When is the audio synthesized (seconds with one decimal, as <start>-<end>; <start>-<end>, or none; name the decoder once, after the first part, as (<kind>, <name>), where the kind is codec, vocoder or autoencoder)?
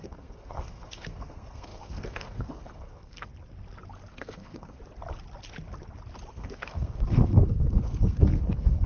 0.0-3.3 (codec, SNAC); 4.1-4.8; 6.3-8.9